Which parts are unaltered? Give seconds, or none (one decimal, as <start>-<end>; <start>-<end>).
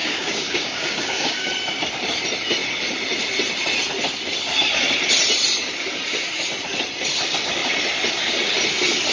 1.5-9.1